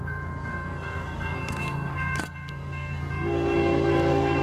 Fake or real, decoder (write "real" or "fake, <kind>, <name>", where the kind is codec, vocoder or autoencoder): fake, codec, SNAC